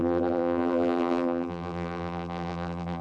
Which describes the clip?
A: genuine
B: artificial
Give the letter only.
B